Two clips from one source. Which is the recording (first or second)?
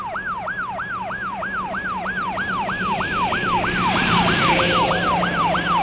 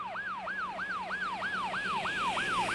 second